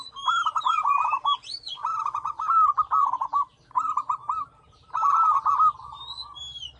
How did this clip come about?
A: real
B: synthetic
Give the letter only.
A